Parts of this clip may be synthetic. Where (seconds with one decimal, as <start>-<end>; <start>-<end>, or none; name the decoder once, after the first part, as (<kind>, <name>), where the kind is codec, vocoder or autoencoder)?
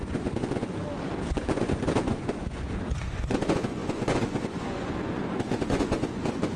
0.0-0.8 (vocoder, Vocos); 1.5-6.6